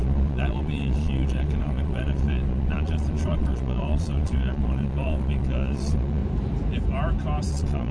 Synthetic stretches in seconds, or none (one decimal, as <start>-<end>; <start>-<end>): 0.0-6.2; 7.5-7.9